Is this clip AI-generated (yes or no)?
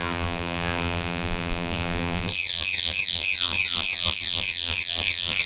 yes